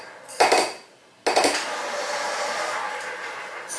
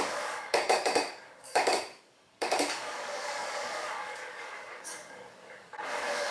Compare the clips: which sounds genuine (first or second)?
first